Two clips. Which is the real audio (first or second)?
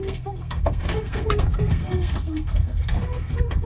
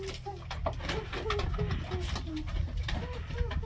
second